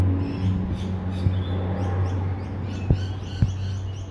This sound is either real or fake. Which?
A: real